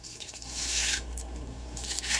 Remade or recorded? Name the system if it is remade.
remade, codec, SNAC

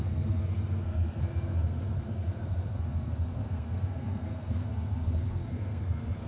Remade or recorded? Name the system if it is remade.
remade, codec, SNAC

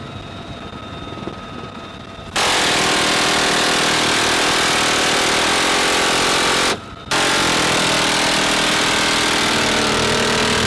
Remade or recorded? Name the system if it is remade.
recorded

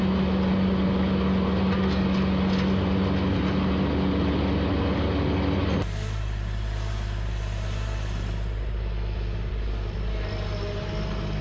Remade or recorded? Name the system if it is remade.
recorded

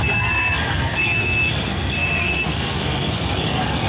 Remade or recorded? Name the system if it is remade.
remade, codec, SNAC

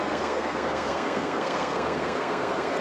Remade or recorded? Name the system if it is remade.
remade, codec, SNAC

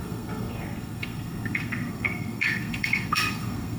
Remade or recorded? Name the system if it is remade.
remade, codec, SNAC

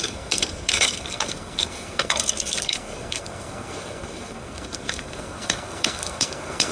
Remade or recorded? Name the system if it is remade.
remade, codec, SNAC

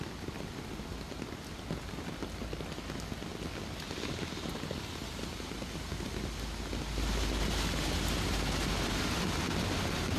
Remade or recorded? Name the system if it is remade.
recorded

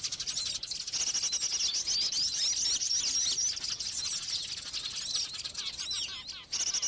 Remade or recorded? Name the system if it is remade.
recorded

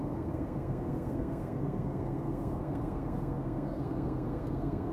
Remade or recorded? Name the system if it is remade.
remade, codec, SNAC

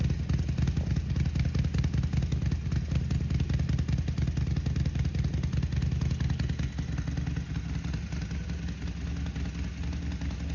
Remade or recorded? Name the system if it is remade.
recorded